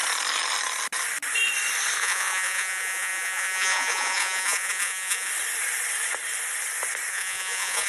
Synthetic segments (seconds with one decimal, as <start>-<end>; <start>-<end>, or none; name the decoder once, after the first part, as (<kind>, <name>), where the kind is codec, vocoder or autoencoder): 2.0-5.3 (vocoder, Vocos); 7.1-7.9